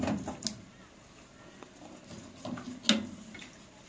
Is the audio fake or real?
real